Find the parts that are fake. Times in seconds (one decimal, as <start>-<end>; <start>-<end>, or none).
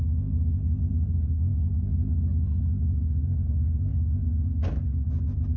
none